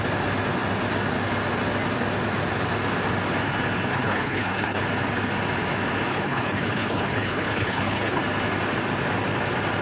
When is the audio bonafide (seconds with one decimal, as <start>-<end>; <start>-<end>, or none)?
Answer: 0.0-3.9; 4.8-6.1; 8.2-9.8